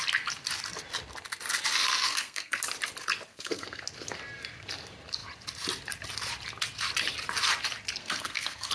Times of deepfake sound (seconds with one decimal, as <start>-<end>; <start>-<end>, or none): 2.1-2.6; 3.3-3.8; 8.0-8.7